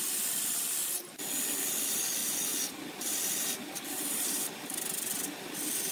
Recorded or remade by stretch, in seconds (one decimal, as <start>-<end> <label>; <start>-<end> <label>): 0.0-2.2 recorded; 2.2-5.9 remade